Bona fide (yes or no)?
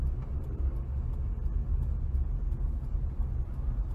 yes